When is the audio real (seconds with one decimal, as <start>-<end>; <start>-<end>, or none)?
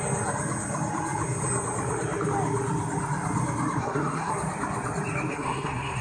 0.0-3.8; 4.3-5.3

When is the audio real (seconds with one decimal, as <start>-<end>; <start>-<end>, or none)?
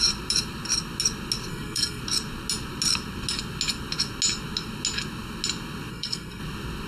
0.0-1.5; 2.0-5.9; 6.4-6.9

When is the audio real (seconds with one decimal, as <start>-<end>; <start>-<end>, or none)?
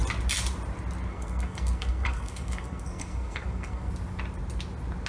0.0-1.1; 3.9-5.1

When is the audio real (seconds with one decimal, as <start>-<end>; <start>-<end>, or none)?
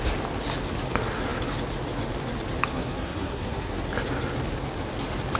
0.0-2.7; 3.8-5.4